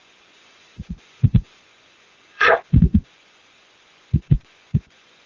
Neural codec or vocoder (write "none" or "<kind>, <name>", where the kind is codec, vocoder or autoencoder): vocoder, Vocos